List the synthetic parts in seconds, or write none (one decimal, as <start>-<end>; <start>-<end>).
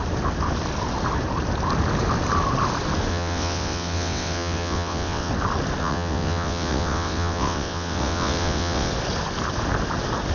3.1-5.3; 5.8-8.9